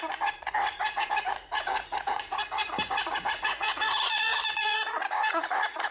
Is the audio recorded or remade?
remade